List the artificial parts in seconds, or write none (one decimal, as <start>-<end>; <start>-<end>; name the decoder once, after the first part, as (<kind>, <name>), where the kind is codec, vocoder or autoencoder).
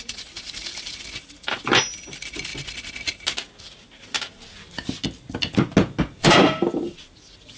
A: 0.0-2.5 (vocoder, BigVGAN v2); 6.0-7.6